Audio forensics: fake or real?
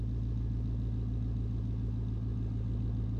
real